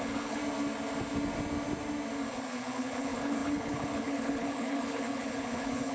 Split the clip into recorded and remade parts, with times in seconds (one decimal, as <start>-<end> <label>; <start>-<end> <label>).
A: 0.0-0.4 remade; 0.4-2.3 recorded; 2.3-5.9 remade